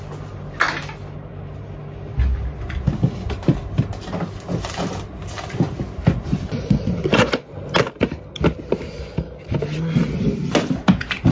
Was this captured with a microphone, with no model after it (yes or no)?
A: yes